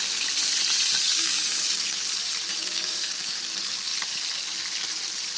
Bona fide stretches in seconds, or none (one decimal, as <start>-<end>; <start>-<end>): 0.0-1.1; 2.0-2.5; 3.4-5.4